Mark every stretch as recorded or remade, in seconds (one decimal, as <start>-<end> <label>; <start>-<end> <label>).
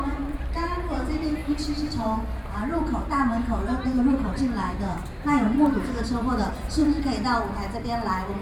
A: 0.0-6.8 remade; 6.8-8.4 recorded